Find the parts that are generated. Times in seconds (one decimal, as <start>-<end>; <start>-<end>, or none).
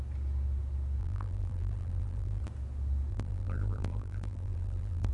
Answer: 1.0-2.4; 3.1-5.1